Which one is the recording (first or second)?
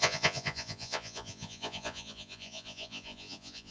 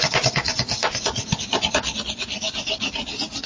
second